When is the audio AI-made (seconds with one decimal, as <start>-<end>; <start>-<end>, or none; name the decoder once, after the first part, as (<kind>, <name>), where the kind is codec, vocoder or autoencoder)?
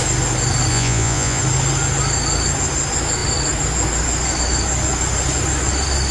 0.7-1.4 (vocoder, Vocos)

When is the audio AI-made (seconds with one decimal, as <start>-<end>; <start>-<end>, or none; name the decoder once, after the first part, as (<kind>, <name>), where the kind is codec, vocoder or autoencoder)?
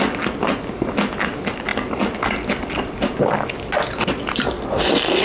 none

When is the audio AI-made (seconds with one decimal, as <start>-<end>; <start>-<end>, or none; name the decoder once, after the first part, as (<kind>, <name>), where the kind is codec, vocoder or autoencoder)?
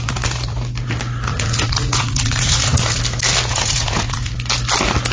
1.3-3.0 (vocoder, Vocos); 3.5-4.3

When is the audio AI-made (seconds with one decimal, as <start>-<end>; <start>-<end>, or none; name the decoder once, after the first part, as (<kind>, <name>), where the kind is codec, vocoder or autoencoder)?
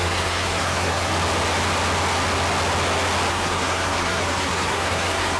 0.0-1.1 (codec, SNAC); 3.3-5.4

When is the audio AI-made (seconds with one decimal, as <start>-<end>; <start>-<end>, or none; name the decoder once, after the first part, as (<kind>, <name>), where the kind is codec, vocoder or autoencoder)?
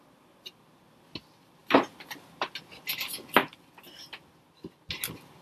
none